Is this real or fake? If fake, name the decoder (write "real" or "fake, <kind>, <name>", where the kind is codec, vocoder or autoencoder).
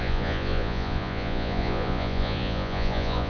fake, vocoder, Vocos